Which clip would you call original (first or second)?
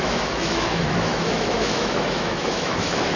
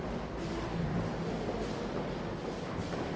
second